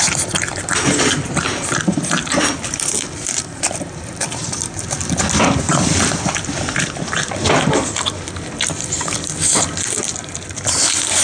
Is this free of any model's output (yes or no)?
no